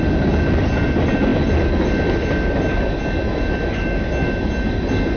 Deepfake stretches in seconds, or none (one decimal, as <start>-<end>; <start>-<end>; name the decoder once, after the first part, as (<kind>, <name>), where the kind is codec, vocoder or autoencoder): none